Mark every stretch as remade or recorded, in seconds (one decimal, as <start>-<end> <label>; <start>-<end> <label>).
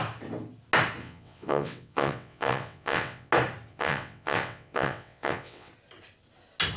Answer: 0.0-1.0 recorded; 1.0-3.3 remade; 3.3-3.7 recorded; 3.7-5.7 remade; 5.7-6.8 recorded